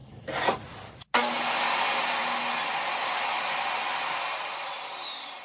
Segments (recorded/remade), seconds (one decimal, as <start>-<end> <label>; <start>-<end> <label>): 0.0-5.4 recorded